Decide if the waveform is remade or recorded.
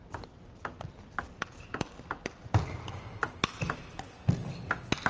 recorded